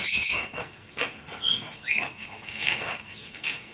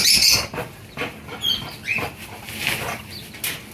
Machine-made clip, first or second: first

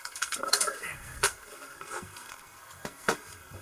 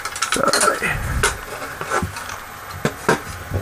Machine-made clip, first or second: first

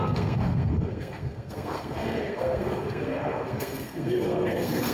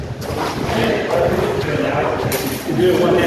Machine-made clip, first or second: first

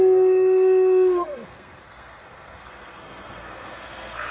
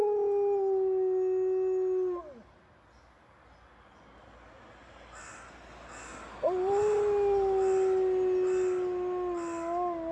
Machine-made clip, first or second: first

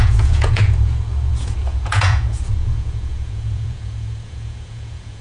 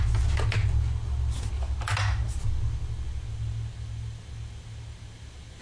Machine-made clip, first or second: first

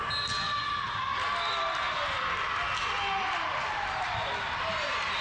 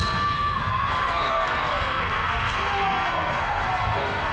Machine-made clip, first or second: second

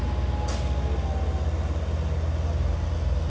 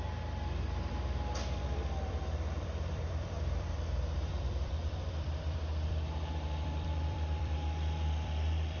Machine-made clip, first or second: second